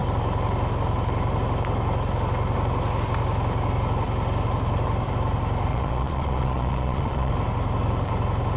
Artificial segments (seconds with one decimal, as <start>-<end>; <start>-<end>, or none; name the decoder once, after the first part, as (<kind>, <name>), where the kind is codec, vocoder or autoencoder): 5.7-7.3 (vocoder, Vocos)